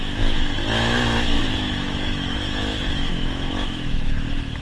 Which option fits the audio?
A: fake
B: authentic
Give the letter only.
A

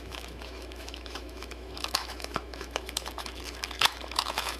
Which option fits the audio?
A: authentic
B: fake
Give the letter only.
B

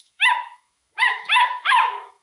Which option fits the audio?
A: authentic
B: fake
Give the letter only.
B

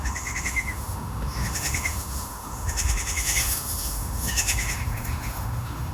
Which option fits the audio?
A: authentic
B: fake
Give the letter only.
B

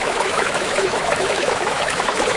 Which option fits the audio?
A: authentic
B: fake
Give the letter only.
B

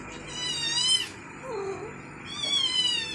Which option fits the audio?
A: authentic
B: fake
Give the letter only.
A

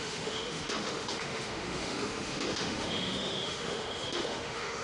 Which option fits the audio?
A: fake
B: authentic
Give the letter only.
A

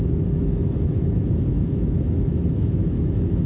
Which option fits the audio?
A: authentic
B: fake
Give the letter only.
B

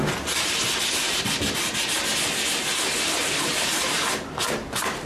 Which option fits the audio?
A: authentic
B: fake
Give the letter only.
A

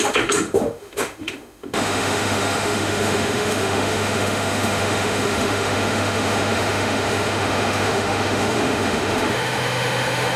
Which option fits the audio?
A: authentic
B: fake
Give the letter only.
B